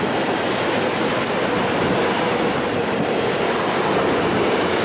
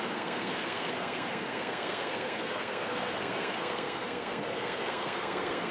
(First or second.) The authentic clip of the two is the first